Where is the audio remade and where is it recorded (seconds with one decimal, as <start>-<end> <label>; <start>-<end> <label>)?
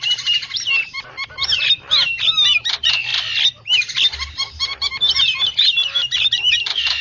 0.0-3.1 remade; 3.1-4.3 recorded; 4.3-7.0 remade